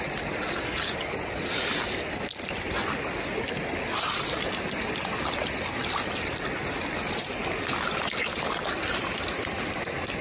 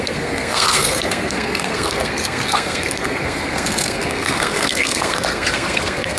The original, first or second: first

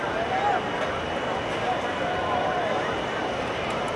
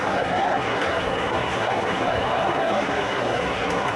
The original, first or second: first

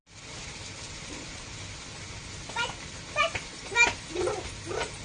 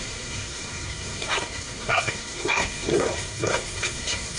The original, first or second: first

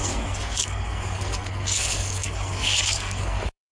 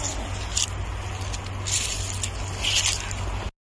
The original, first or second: second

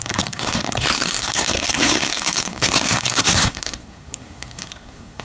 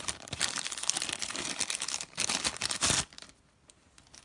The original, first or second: second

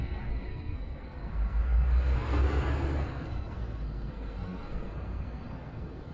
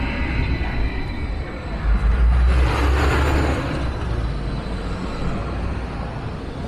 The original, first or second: second